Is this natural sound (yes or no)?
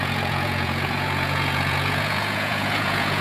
no